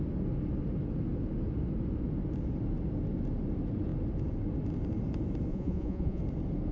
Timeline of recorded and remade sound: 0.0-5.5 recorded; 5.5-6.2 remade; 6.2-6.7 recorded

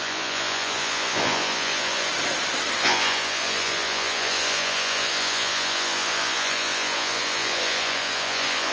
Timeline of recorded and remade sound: 0.0-2.1 remade; 2.1-2.8 recorded; 2.8-8.7 remade

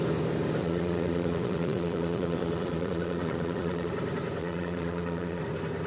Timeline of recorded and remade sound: 0.0-0.6 recorded; 0.6-3.9 remade; 3.9-4.4 recorded; 4.4-5.4 remade; 5.4-5.9 recorded